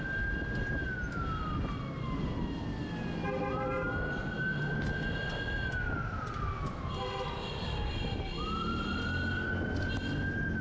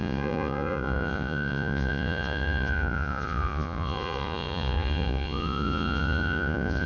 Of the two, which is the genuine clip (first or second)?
first